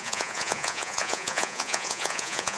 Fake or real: fake